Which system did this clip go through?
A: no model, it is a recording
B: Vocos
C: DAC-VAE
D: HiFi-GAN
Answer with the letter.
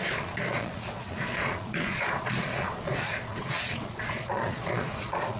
B